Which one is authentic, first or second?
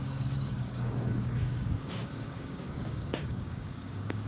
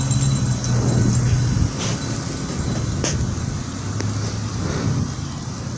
second